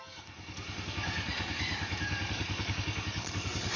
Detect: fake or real fake